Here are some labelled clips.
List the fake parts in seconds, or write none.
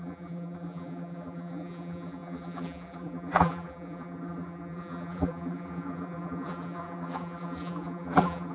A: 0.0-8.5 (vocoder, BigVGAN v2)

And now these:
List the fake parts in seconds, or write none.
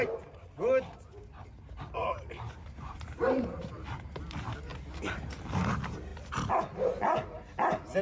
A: 2.0-4.2 (vocoder, BigVGAN v2); 4.7-5.3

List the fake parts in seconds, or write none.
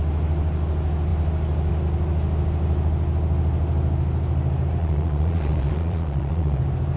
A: 4.8-6.6 (vocoder, Vocos)